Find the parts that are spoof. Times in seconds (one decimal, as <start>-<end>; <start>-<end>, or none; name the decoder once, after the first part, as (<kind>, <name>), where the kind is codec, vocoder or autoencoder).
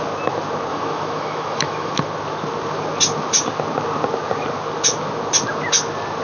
0.7-1.9 (autoencoder, DAC-VAE)